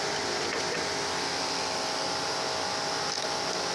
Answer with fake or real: real